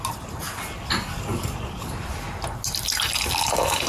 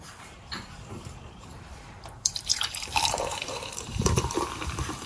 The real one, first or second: first